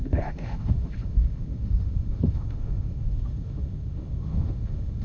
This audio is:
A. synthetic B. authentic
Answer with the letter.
A